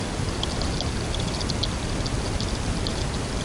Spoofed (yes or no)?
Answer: no